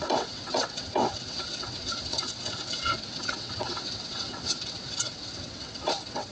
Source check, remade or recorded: remade